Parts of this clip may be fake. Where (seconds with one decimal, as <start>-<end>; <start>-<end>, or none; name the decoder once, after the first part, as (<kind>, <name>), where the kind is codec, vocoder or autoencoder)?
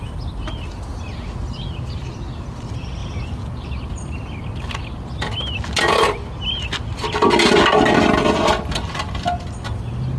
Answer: none